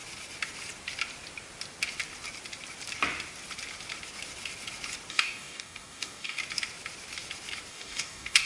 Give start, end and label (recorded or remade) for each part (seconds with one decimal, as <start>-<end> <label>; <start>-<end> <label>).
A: 0.0-5.1 recorded; 5.1-6.4 remade; 6.4-7.7 recorded; 7.7-8.5 remade